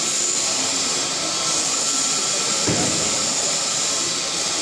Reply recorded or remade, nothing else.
recorded